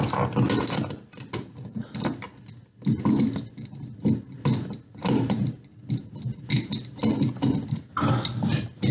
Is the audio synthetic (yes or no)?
no